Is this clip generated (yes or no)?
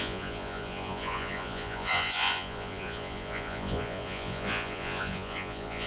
yes